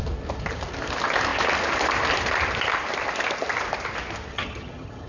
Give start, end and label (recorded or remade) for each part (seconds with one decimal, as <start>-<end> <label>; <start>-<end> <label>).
0.0-4.3 recorded; 4.3-5.1 remade